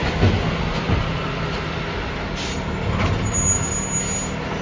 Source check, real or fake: real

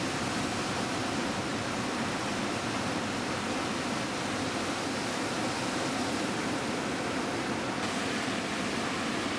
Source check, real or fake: real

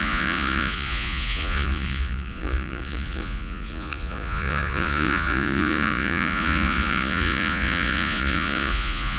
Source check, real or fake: fake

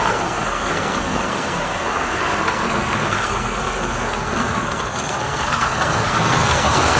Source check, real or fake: fake